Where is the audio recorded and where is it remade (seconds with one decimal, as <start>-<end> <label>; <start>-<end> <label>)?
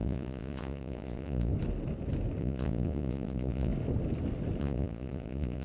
0.0-1.5 remade; 1.5-2.4 recorded; 2.4-3.7 remade; 3.7-4.6 recorded; 4.6-5.6 remade